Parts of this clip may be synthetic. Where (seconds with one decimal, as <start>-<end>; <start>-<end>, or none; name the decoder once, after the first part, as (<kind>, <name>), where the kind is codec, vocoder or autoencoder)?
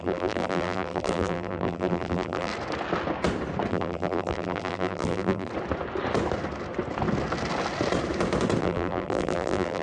0.0-2.5 (vocoder, BigVGAN v2); 3.7-5.5; 8.6-9.8